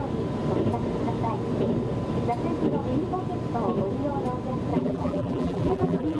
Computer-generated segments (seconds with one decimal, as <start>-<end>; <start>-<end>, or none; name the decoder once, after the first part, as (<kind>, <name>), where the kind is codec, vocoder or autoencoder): 4.7-6.2 (vocoder, BigVGAN v2)